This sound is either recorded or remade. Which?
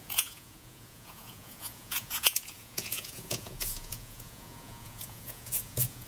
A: remade